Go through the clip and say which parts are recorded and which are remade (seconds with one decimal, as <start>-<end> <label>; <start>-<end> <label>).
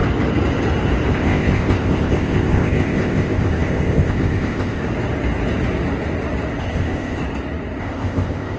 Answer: 0.0-1.1 recorded; 1.1-4.8 remade; 4.8-6.6 recorded; 6.6-7.2 remade; 7.2-7.8 recorded; 7.8-8.6 remade